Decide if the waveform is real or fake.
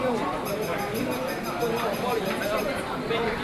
real